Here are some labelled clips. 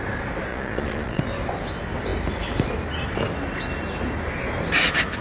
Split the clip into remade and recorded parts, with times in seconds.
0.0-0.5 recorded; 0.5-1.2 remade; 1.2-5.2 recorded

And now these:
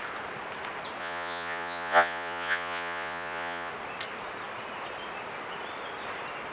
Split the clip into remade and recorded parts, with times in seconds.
0.0-1.0 recorded; 1.0-3.7 remade; 3.7-6.5 recorded

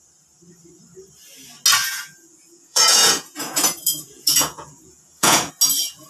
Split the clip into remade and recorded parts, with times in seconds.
0.0-1.8 recorded; 1.8-5.5 remade; 5.5-6.1 recorded

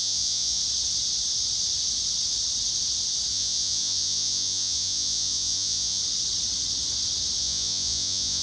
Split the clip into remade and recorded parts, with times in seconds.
0.0-0.6 remade; 0.6-3.3 recorded; 3.3-6.0 remade; 6.0-7.4 recorded; 7.4-8.4 remade

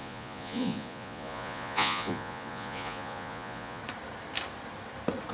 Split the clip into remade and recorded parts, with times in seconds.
0.0-3.8 remade; 3.8-5.3 recorded

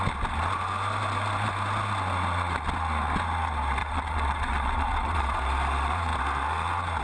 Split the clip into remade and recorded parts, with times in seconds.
0.0-3.8 recorded; 3.8-5.4 remade; 5.4-7.0 recorded

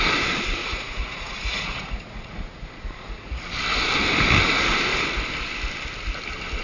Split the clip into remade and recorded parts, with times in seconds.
0.0-0.6 recorded; 0.6-3.4 remade; 3.4-6.6 recorded

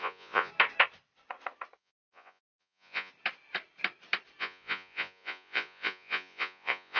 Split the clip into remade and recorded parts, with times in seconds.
0.0-0.5 remade; 0.5-1.8 recorded; 1.8-3.1 remade; 3.1-4.4 recorded; 4.4-7.0 remade